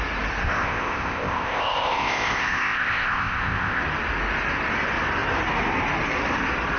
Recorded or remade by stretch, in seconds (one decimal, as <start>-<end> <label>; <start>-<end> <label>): 0.0-0.4 recorded; 0.4-3.8 remade; 3.8-6.8 recorded